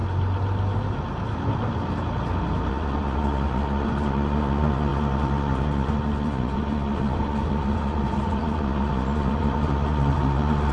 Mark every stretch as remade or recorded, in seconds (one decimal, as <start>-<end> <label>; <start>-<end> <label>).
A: 0.0-2.7 recorded; 2.7-10.7 remade